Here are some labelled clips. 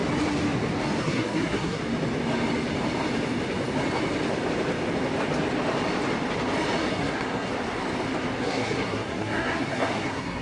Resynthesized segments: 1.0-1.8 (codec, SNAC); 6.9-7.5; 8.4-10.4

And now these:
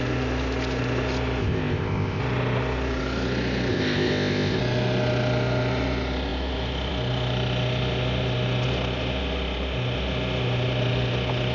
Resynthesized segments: 1.4-2.2 (codec, ZipCodec); 3.7-4.6

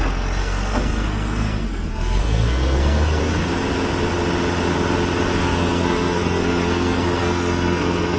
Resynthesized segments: 0.4-3.2 (codec, SNAC); 5.4-8.2

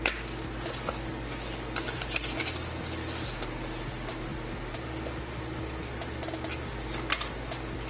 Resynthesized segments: none